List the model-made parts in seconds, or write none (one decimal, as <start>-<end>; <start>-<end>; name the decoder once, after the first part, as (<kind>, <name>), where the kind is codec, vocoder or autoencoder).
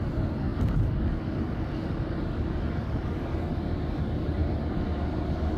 0.0-5.6 (codec, DAC)